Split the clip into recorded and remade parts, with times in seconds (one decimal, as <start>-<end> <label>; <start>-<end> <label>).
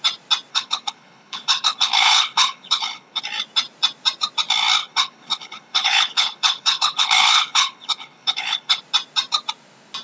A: 0.0-0.5 recorded; 0.5-3.2 remade; 3.2-4.8 recorded; 4.8-8.8 remade; 8.8-10.0 recorded